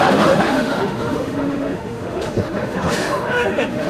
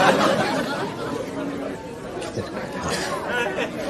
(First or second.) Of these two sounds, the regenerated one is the first